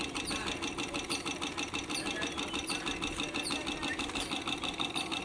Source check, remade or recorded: recorded